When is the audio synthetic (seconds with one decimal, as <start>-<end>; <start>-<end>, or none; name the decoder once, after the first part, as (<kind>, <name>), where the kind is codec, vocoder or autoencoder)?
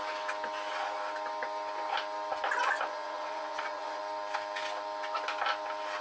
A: 2.6-4.0 (vocoder, Vocos)